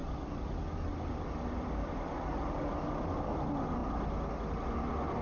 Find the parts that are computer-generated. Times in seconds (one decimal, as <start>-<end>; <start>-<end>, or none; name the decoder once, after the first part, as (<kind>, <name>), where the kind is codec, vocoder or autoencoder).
none